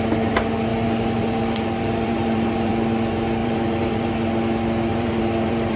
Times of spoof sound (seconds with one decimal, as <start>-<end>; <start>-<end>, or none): 0.7-2.7; 3.4-4.1; 4.9-5.8